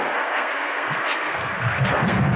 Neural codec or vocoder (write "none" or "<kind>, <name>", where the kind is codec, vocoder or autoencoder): codec, SNAC